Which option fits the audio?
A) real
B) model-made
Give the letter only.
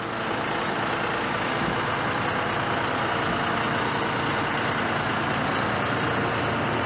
A